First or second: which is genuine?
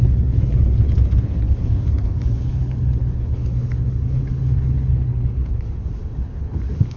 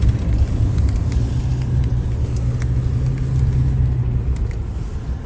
second